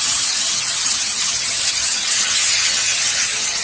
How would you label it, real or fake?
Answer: fake